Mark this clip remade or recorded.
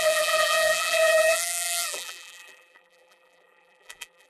remade